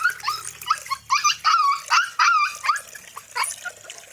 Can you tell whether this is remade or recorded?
recorded